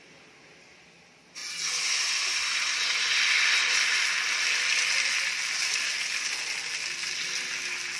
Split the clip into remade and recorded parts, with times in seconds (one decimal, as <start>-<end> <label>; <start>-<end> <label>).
0.0-8.0 recorded